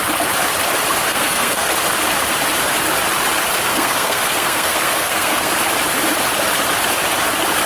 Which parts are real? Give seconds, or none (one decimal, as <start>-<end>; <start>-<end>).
0.0-1.1; 1.7-3.7; 5.5-7.7